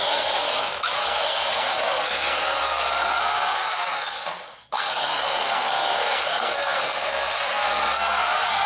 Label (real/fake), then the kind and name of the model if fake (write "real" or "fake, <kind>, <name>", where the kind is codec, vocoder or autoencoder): fake, codec, SNAC